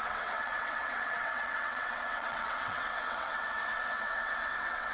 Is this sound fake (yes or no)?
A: yes